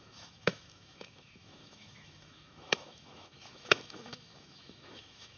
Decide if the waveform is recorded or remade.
remade